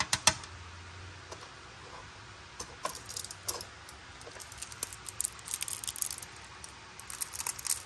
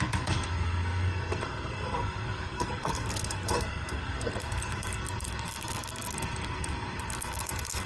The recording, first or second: first